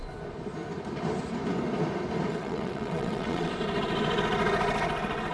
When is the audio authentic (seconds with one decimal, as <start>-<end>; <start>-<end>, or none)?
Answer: 0.0-2.3; 3.5-5.3